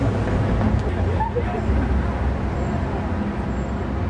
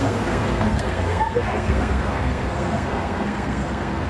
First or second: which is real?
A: first